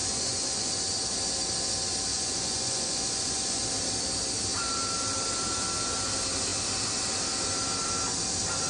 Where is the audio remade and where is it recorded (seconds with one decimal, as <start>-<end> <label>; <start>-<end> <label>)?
0.0-0.7 remade; 0.7-2.1 recorded; 2.1-3.6 remade; 3.6-8.7 recorded